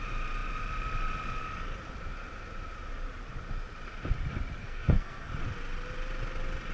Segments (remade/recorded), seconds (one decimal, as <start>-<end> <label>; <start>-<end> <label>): 0.0-4.6 recorded; 4.6-5.3 remade; 5.3-6.7 recorded